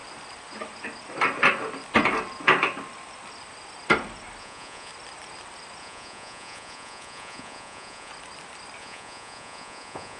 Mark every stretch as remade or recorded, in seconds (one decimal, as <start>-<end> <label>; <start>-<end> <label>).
0.0-4.4 recorded; 4.4-4.9 remade; 4.9-5.8 recorded; 5.8-8.1 remade; 8.1-8.8 recorded; 8.8-10.2 remade